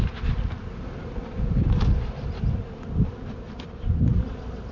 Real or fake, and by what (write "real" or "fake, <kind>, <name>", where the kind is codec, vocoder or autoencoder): real